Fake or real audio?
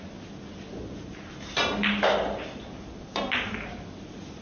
real